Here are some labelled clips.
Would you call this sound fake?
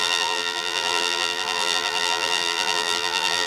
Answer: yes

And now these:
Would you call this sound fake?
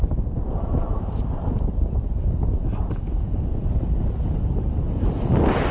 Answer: yes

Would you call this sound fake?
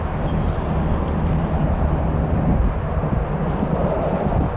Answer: no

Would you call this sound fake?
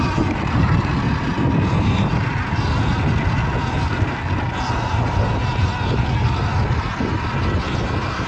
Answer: no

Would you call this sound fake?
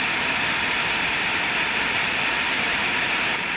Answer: no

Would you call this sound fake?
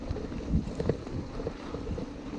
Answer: yes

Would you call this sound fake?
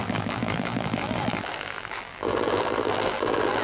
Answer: yes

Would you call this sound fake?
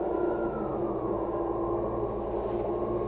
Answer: no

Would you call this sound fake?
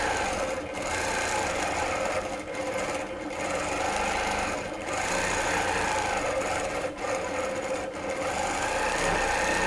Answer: no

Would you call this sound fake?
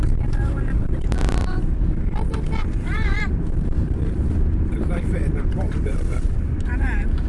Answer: yes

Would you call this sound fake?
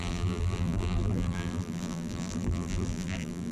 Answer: yes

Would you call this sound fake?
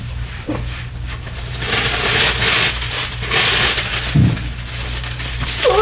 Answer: no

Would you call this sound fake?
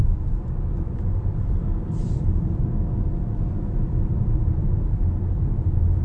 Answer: yes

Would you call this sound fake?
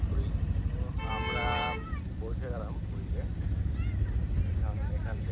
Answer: no